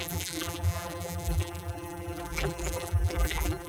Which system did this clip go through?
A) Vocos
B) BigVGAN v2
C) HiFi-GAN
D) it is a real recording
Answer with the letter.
B